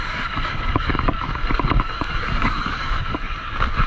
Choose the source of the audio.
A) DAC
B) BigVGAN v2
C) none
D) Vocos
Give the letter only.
A